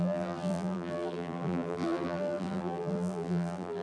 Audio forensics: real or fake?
fake